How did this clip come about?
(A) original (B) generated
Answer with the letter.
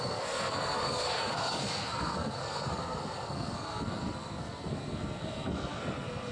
B